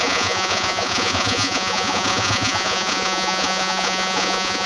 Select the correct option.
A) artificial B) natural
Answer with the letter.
A